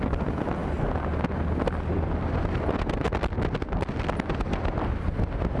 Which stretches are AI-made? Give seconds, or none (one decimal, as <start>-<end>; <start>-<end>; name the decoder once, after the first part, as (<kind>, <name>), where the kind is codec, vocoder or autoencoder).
none